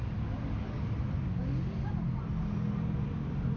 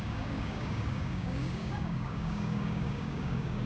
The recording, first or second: first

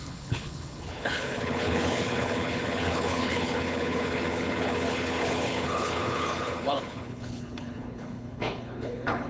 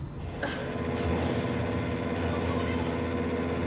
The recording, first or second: second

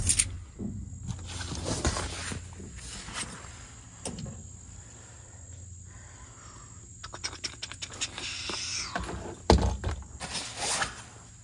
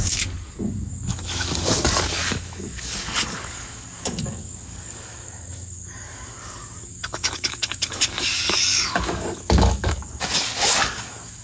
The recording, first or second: first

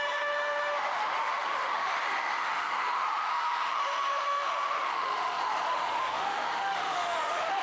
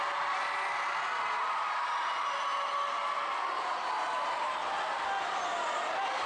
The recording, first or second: second